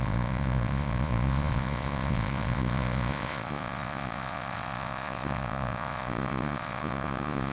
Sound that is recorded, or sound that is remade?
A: remade